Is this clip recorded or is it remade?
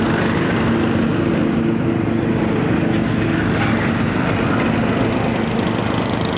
recorded